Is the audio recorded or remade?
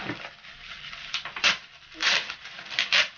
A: recorded